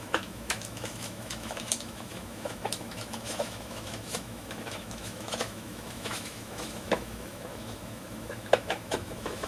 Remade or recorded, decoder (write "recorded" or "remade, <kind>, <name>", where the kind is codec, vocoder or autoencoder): remade, autoencoder, DAC-VAE